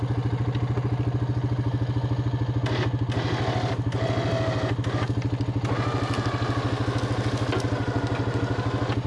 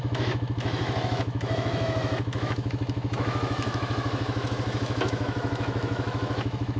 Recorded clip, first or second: first